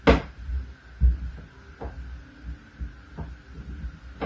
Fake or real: real